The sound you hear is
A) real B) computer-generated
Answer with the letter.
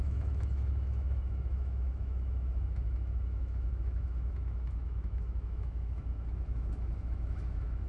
B